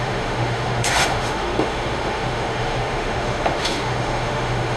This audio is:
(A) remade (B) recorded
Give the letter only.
A